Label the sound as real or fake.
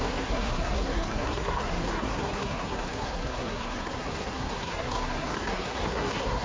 fake